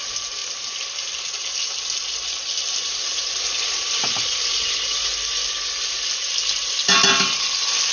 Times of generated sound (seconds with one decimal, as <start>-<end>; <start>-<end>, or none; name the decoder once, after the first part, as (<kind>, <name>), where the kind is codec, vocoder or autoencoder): none